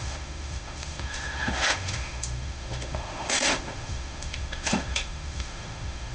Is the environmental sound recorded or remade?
remade